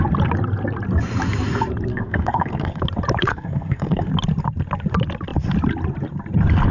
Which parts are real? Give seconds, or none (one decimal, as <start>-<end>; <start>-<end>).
0.0-1.9; 2.8-3.3; 4.1-6.7